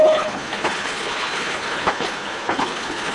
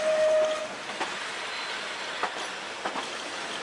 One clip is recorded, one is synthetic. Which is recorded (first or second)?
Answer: second